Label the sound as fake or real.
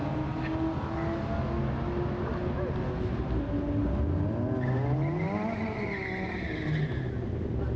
real